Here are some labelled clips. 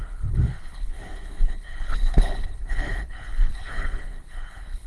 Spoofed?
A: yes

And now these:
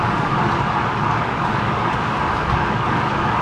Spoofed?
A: yes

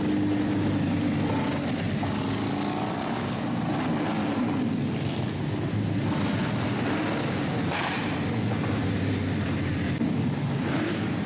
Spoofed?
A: no